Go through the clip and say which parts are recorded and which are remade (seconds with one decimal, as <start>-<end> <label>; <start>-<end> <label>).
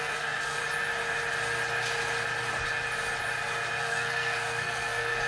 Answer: 0.0-0.6 remade; 0.6-3.8 recorded; 3.8-5.3 remade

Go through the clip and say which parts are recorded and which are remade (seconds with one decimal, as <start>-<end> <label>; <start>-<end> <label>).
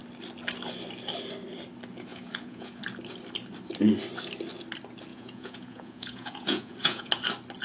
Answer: 0.0-2.1 recorded; 2.1-2.8 remade; 2.8-5.1 recorded; 5.1-7.1 remade; 7.1-7.6 recorded